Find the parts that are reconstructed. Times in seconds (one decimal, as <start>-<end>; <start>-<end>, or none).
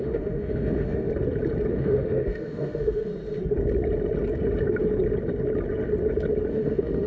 0.0-1.1; 1.7-3.1; 6.5-7.1